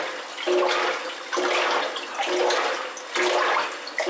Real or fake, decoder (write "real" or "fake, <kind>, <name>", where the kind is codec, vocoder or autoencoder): real